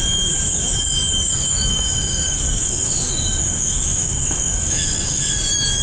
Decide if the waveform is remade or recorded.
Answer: remade